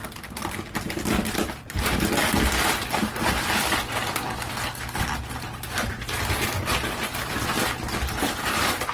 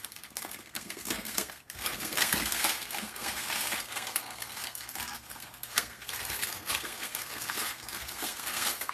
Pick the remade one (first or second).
second